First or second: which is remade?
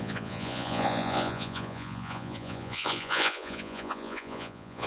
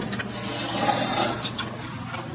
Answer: first